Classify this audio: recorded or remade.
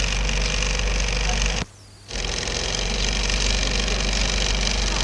recorded